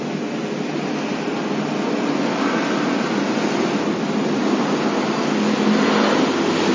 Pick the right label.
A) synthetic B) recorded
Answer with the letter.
B